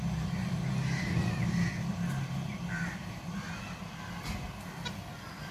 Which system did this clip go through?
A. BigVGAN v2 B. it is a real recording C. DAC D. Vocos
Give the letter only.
B